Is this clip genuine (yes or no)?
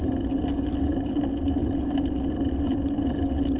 yes